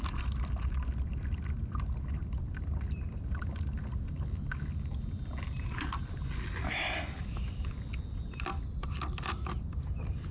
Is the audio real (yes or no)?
yes